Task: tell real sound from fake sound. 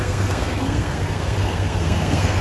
fake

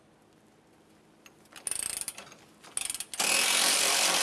real